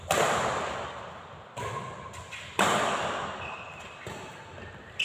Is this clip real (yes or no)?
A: yes